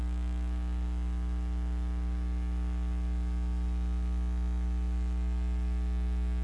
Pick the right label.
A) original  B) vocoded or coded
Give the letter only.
B